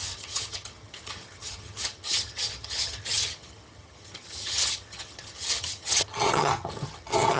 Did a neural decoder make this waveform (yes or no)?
yes